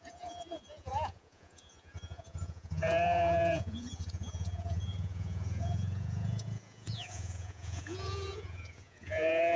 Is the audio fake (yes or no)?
yes